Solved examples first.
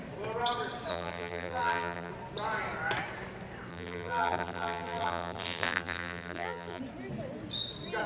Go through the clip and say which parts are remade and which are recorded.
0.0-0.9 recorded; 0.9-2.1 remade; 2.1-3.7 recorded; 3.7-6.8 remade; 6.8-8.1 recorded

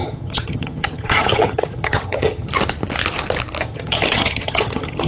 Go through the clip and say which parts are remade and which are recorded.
0.0-2.5 remade; 2.5-3.7 recorded; 3.7-5.1 remade

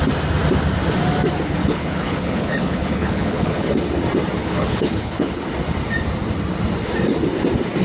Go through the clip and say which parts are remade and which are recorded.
0.0-1.6 recorded; 1.6-3.7 remade; 3.7-4.4 recorded; 4.4-5.4 remade; 5.4-7.8 recorded

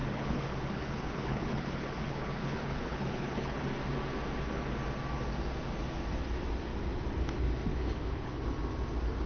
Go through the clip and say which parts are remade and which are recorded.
0.0-3.6 remade; 3.6-7.7 recorded; 7.7-8.4 remade; 8.4-9.3 recorded

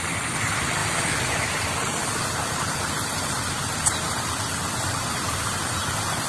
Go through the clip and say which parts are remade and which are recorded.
0.0-6.3 recorded

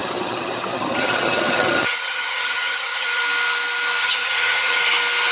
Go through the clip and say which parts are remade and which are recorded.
0.0-3.2 remade; 3.2-4.0 recorded; 4.0-4.8 remade; 4.8-5.3 recorded

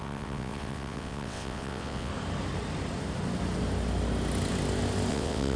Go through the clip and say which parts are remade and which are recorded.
0.0-2.1 remade; 2.1-5.1 recorded; 5.1-5.6 remade